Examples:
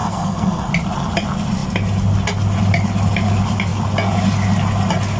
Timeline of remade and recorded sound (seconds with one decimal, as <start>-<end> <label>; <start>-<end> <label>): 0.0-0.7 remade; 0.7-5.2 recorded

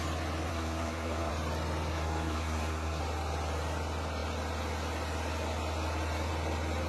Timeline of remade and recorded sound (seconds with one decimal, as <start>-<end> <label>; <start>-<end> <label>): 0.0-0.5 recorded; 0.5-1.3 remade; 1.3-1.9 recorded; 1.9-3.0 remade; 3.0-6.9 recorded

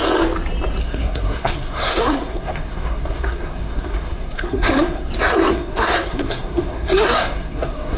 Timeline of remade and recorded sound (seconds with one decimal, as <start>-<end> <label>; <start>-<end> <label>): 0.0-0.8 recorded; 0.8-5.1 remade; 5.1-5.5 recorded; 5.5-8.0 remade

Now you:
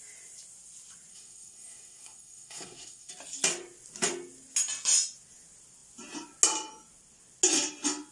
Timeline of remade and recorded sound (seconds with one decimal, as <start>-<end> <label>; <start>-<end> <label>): 0.0-1.1 recorded; 1.1-3.1 remade; 3.1-8.1 recorded

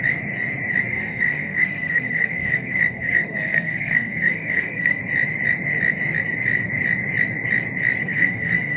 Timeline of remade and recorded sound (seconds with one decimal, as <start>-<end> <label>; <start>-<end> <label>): 0.0-0.9 recorded; 0.9-5.0 remade; 5.0-8.0 recorded; 8.0-8.8 remade

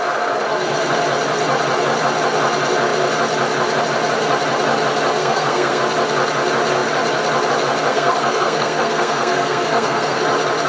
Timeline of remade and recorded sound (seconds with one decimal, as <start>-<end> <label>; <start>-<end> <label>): 0.0-5.2 recorded; 5.2-5.8 remade; 5.8-7.9 recorded; 7.9-10.2 remade; 10.2-10.7 recorded